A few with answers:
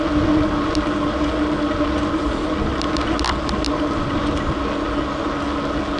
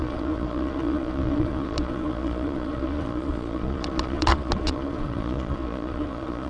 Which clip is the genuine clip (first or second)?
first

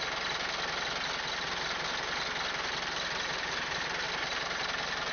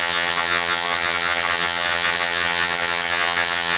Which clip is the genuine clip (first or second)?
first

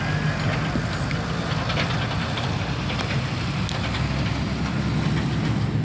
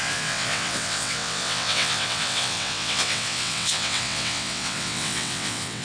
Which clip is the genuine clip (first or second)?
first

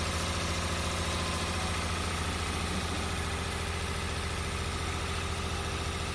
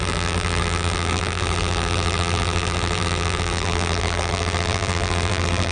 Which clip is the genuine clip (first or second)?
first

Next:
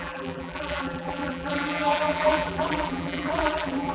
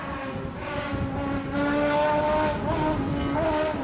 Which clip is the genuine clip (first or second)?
second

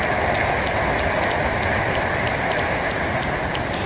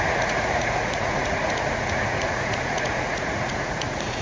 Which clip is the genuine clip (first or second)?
first